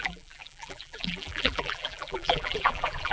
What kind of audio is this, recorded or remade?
remade